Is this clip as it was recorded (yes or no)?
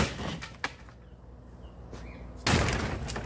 yes